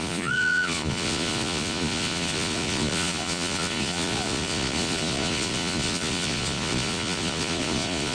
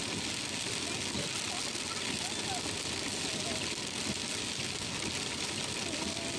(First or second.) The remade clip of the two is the first